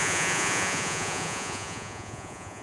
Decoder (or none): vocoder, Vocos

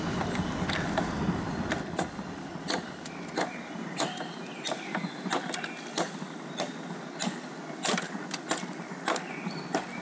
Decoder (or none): none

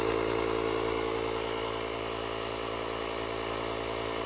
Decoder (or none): none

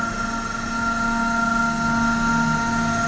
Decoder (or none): none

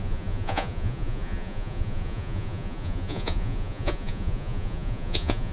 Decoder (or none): vocoder, Vocos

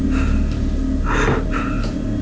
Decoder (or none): none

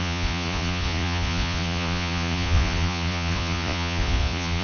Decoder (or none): vocoder, Vocos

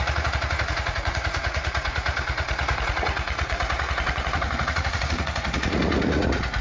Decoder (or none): vocoder, Vocos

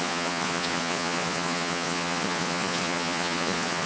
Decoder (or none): vocoder, Vocos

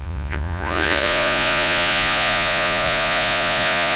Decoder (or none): vocoder, Vocos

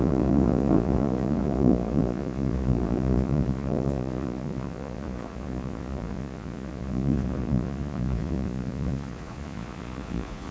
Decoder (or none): vocoder, Vocos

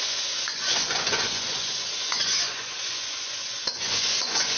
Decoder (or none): vocoder, Vocos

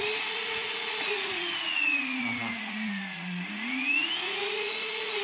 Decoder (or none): vocoder, Vocos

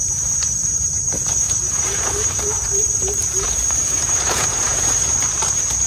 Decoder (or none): vocoder, Vocos